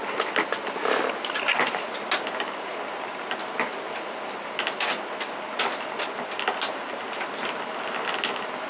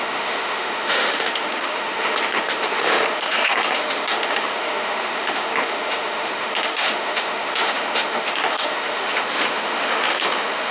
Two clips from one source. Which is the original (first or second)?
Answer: first